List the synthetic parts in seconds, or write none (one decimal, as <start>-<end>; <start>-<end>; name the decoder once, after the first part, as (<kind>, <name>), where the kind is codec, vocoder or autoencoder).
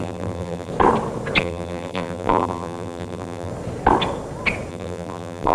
0.0-0.7 (vocoder, BigVGAN v2); 1.4-3.5; 4.7-5.5